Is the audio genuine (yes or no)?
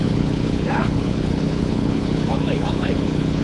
no